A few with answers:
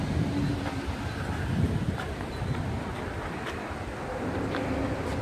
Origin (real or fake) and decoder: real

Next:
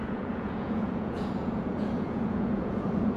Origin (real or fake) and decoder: fake, vocoder, Vocos